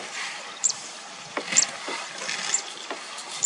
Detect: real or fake fake